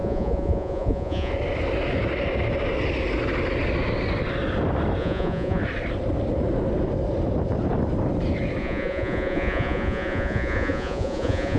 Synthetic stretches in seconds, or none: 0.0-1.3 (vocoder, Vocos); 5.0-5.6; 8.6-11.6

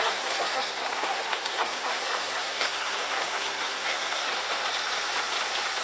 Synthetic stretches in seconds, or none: 0.0-4.3 (codec, SNAC)

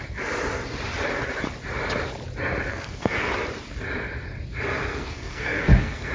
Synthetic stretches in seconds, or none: 2.7-3.3 (codec, SNAC); 4.8-6.1

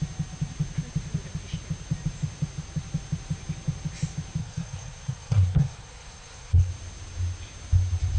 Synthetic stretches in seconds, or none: 4.4-6.7 (codec, SNAC)

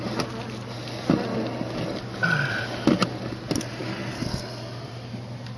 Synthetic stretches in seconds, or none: none